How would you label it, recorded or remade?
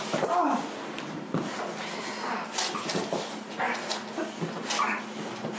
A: recorded